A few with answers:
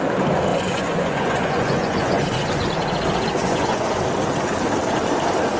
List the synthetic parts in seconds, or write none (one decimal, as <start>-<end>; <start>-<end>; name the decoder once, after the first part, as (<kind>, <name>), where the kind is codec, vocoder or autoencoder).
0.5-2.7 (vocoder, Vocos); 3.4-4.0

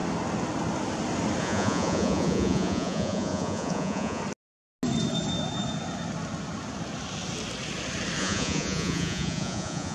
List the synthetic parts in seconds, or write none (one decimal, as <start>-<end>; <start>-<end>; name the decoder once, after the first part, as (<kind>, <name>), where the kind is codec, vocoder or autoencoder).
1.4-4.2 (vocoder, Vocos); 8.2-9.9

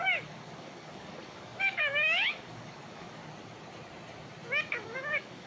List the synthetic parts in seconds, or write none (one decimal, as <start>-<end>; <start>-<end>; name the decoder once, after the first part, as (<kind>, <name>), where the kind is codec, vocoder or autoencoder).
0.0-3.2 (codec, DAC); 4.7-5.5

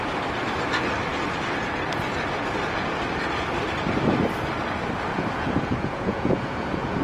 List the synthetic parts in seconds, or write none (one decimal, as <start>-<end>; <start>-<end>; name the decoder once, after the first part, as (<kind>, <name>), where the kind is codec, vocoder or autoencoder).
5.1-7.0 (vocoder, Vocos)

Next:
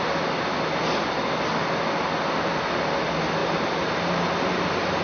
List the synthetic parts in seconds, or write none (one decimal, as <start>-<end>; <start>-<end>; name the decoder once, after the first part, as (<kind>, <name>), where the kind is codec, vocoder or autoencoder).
3.4-4.6 (vocoder, BigVGAN v2)

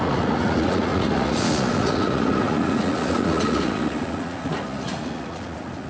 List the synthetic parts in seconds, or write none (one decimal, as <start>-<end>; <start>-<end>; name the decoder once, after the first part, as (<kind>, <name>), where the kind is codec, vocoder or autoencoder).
0.0-5.9 (vocoder, Vocos)

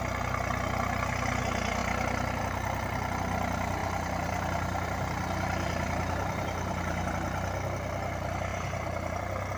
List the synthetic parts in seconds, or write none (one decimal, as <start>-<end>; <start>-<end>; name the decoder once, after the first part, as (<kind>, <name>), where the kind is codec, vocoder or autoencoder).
3.8-7.1 (vocoder, BigVGAN v2); 8.5-9.2